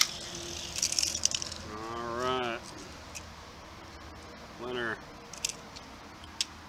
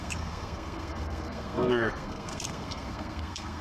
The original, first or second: first